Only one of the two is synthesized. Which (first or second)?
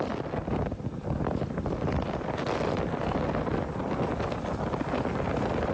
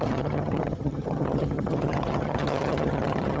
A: second